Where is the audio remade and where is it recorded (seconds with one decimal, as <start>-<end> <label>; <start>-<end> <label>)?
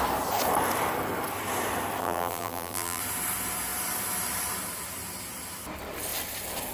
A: 0.0-2.0 recorded; 2.0-3.0 remade; 3.0-6.7 recorded